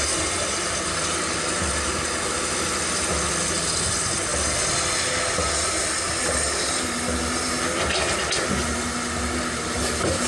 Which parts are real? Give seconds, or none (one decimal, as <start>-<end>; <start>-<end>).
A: 0.0-10.3